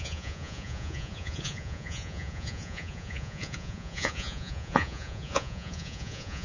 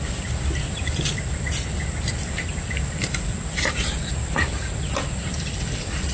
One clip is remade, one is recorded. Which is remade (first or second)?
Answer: first